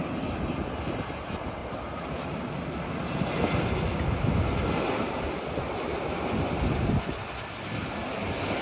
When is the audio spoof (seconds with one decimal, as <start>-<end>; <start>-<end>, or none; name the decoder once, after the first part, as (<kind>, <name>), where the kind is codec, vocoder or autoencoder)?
1.6-2.5 (vocoder, BigVGAN v2); 5.9-7.4